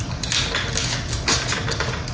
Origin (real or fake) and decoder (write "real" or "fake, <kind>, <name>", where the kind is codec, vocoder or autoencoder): real